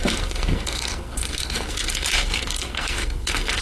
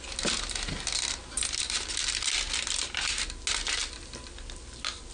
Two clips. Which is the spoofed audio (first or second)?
first